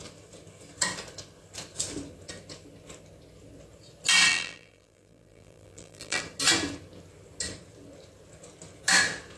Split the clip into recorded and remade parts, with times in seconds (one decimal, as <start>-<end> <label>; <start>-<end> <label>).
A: 0.0-4.3 recorded; 4.3-6.2 remade; 6.2-9.4 recorded